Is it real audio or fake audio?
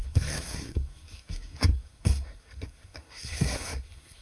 fake